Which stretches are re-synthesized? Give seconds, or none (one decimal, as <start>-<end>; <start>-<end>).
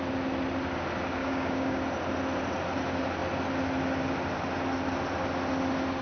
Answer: 1.2-1.8